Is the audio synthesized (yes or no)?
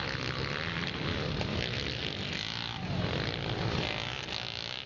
no